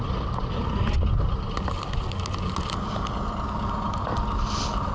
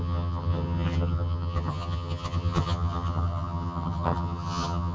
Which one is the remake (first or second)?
second